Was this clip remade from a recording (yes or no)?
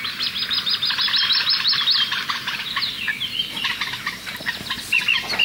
no